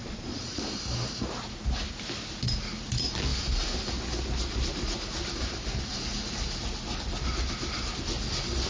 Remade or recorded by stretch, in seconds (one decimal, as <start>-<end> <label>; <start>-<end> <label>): 0.0-0.6 remade; 0.6-8.7 recorded